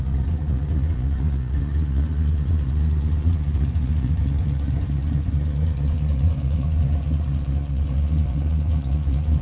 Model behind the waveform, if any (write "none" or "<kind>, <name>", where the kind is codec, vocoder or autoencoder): vocoder, Vocos